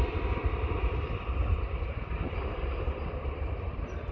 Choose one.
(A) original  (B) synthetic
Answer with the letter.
A